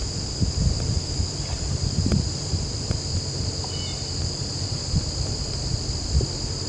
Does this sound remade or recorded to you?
recorded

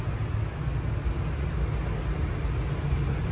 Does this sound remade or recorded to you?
recorded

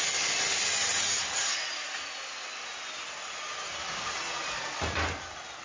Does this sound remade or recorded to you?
recorded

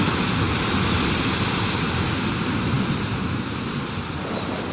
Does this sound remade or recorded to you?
recorded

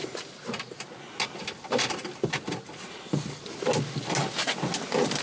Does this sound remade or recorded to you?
recorded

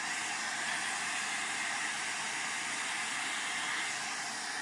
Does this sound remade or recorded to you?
recorded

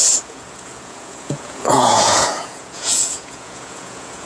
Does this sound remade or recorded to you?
remade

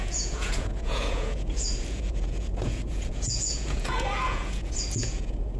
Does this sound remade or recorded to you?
remade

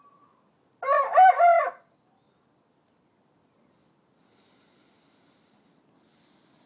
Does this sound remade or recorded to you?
recorded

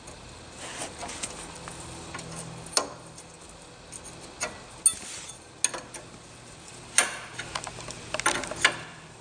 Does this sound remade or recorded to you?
recorded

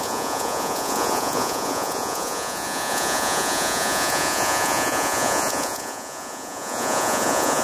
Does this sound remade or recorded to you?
remade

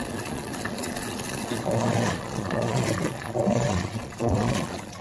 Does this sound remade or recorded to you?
remade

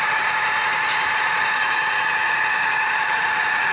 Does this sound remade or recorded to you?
remade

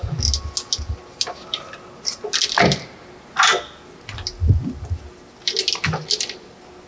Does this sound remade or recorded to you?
recorded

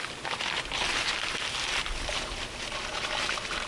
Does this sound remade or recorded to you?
recorded